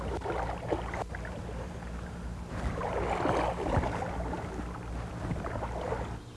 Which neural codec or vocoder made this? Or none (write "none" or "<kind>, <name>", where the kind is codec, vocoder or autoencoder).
none